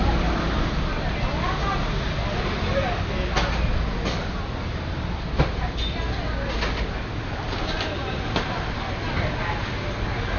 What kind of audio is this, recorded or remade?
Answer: recorded